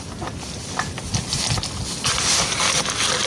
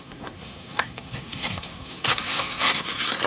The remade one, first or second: second